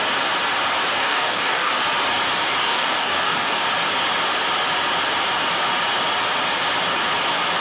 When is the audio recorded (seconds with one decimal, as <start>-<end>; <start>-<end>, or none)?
0.0-1.0; 1.7-2.6; 3.6-7.6